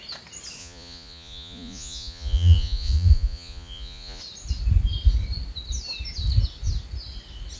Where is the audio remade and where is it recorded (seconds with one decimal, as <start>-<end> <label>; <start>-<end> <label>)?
0.0-0.6 recorded; 0.6-4.2 remade; 4.2-7.6 recorded